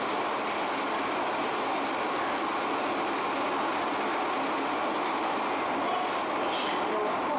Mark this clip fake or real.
real